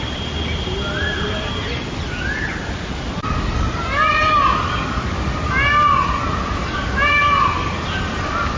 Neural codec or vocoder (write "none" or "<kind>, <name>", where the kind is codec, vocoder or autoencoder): none